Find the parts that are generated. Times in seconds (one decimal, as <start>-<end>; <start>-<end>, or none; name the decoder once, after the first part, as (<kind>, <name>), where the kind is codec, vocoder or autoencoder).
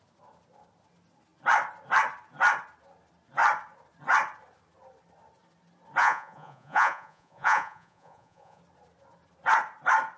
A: 6.0-8.6 (vocoder, Vocos)